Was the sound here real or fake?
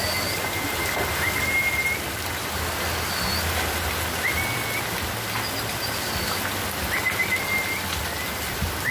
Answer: real